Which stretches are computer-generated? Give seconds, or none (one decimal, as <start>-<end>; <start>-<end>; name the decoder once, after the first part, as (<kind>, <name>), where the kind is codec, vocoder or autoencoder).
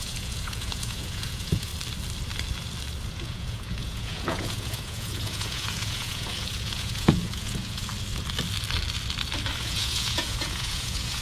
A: 0.0-1.7 (vocoder, Vocos); 3.1-7.9; 9.6-11.2